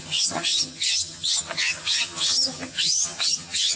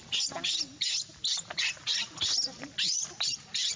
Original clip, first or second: second